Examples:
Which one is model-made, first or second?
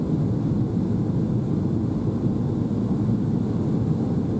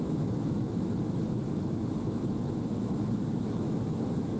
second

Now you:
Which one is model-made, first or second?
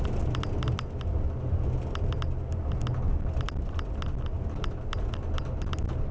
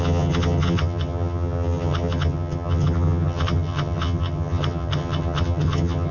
second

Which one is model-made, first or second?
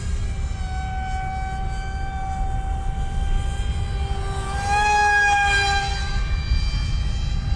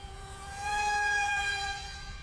second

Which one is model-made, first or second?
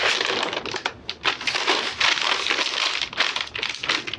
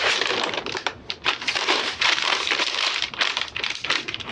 second